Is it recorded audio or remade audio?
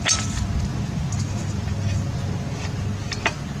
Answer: recorded